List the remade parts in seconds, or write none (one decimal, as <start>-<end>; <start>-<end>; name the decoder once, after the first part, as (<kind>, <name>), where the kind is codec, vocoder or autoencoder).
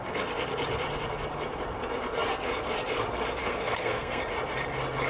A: 3.4-4.2 (codec, SNAC)